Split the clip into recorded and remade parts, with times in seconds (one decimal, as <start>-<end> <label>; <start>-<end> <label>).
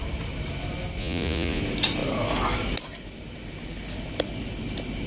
0.0-1.0 recorded; 1.0-1.6 remade; 1.6-5.1 recorded